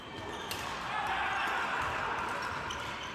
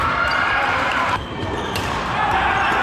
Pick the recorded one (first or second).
first